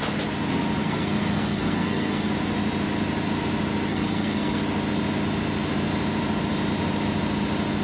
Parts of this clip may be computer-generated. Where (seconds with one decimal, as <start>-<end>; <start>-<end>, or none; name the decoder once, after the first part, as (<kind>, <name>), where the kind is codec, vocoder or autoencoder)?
0.8-2.3 (codec, SNAC); 3.9-4.6

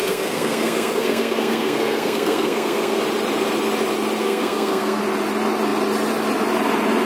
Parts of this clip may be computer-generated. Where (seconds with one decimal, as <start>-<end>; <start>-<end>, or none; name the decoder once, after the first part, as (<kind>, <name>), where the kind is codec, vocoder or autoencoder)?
0.0-3.0 (codec, SNAC); 4.2-5.0